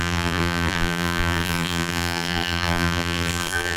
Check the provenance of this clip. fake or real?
fake